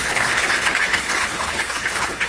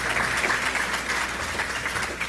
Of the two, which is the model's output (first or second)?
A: first